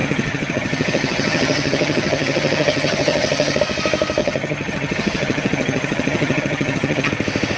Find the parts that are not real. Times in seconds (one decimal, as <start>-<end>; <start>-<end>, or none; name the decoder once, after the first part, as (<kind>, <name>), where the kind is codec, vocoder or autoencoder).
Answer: 0.0-3.6 (vocoder, HiFi-GAN); 4.2-7.1